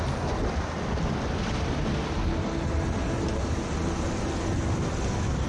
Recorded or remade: recorded